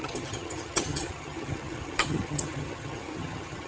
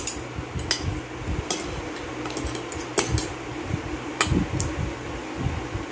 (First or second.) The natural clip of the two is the second